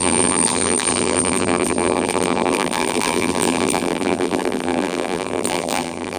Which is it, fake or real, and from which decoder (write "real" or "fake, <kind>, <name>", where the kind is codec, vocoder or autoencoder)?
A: fake, vocoder, BigVGAN v2